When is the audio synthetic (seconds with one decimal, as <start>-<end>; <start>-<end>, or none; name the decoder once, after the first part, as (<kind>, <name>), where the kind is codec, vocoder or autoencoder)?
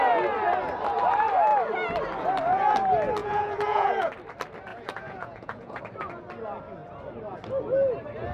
3.2-4.1 (vocoder, Vocos); 4.7-5.8